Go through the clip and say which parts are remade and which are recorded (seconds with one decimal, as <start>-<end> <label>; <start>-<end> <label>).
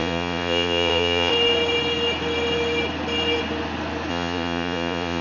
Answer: 0.0-1.3 remade; 1.3-4.1 recorded; 4.1-5.2 remade